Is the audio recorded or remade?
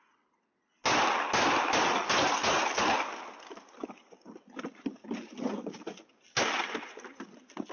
recorded